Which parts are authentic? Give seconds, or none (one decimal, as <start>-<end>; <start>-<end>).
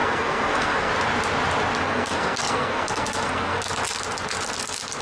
0.9-1.8; 3.7-5.0